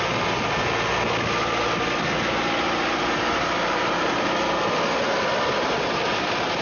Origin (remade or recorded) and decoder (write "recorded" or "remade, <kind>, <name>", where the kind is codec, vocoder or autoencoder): recorded